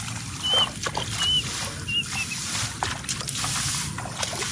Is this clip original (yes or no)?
yes